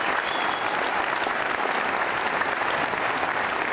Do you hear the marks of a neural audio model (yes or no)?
no